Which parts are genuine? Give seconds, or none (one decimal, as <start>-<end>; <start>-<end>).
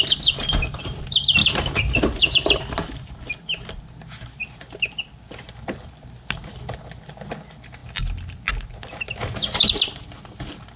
7.8-9.1